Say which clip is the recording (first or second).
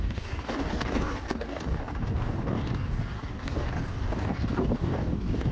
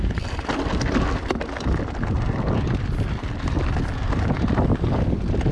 second